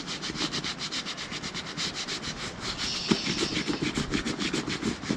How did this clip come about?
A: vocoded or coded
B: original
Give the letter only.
B